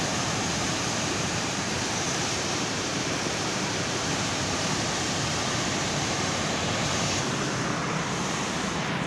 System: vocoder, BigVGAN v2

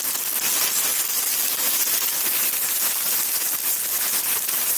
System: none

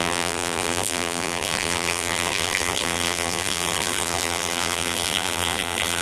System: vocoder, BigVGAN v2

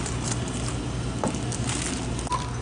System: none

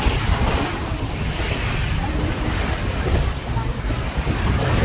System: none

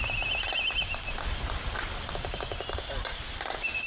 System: none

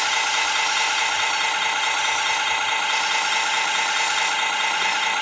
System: none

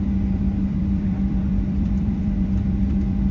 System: vocoder, BigVGAN v2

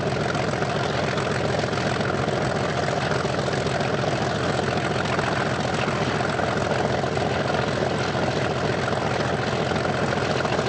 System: none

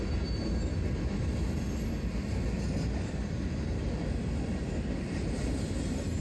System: none